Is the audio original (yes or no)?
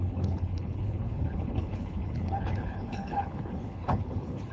no